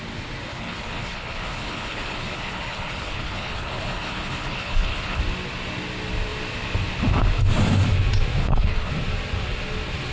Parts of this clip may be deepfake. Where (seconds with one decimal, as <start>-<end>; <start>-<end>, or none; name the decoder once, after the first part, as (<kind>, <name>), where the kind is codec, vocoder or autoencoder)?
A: 0.5-5.2 (codec, HILCodec); 8.4-8.9